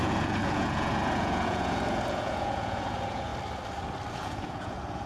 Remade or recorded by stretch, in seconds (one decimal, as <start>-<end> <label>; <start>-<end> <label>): 0.0-3.3 remade; 3.3-4.1 recorded; 4.1-5.1 remade